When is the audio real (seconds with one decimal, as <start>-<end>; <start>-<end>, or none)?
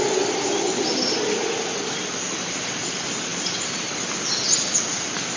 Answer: 0.0-5.4